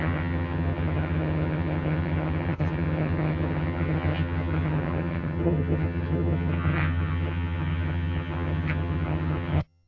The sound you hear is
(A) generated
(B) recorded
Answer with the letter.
A